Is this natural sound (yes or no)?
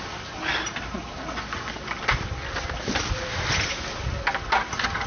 yes